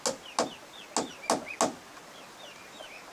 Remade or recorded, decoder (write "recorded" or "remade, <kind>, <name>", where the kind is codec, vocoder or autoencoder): recorded